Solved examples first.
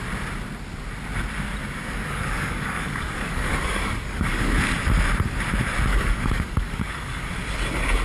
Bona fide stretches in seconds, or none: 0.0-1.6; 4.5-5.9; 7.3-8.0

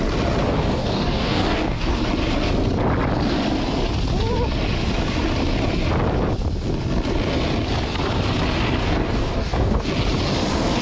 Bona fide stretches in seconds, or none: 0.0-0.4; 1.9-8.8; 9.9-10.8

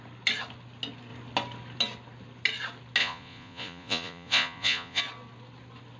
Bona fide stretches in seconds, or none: 0.0-3.0; 5.0-6.0

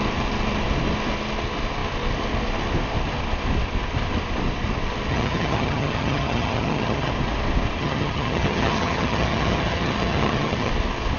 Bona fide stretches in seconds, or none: 0.0-5.1; 7.1-7.8; 10.7-11.2